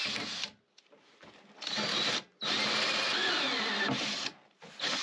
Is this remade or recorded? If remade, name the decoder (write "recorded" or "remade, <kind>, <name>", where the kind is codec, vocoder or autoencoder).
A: recorded